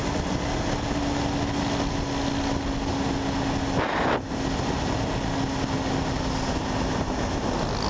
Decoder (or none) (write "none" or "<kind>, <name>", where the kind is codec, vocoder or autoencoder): none